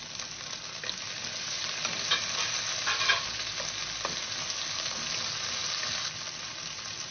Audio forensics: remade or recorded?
recorded